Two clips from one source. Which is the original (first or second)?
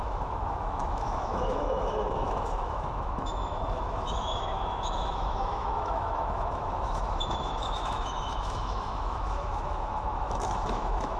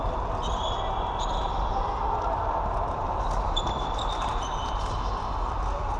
second